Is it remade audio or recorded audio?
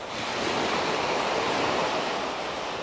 recorded